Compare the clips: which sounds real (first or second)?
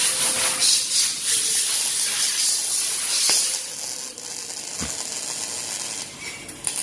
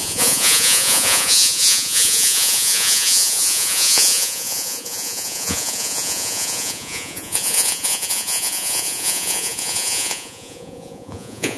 first